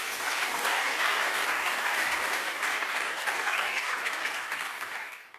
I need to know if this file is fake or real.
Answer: fake